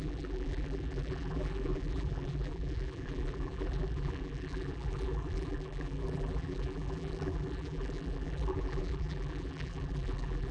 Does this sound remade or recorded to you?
remade